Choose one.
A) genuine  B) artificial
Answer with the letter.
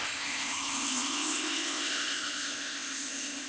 B